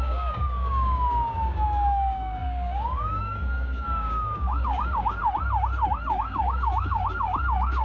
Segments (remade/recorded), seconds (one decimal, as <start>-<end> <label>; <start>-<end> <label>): 0.0-5.2 remade; 5.2-6.1 recorded; 6.1-7.8 remade